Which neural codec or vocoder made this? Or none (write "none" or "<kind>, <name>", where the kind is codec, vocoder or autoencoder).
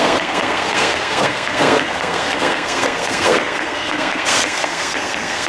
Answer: codec, SNAC